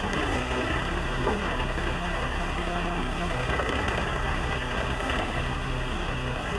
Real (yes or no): no